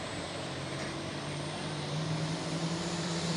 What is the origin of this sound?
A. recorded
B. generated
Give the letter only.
B